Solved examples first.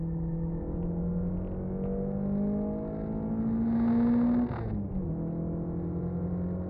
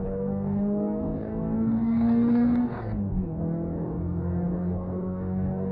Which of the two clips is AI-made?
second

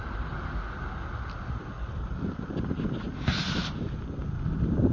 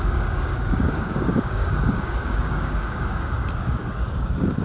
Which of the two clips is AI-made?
second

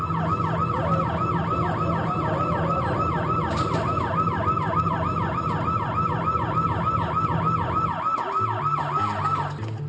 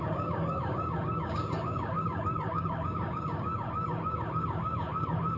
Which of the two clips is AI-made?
second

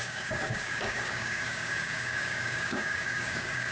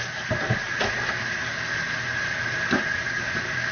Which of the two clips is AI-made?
first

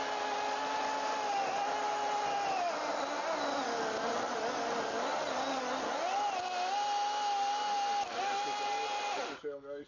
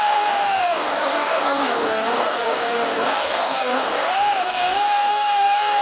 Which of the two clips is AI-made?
second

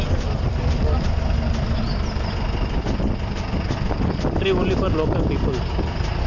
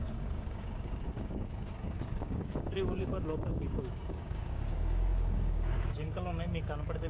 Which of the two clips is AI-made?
second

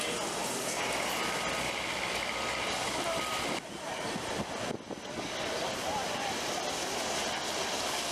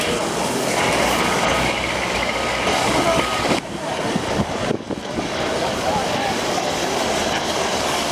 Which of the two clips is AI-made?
second